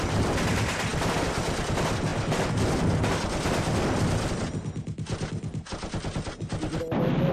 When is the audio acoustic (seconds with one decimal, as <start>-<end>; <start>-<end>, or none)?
0.0-7.3